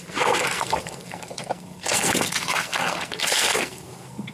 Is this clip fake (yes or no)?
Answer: yes